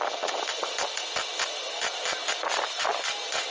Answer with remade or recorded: recorded